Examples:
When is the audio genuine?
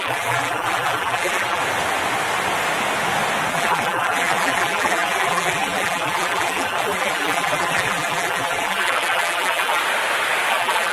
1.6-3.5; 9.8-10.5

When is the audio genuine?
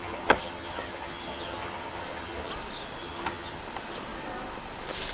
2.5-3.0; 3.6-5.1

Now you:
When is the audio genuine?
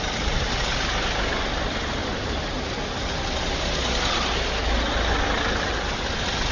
0.0-2.0; 2.7-6.5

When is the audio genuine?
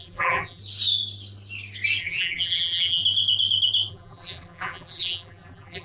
0.6-2.0; 3.0-3.9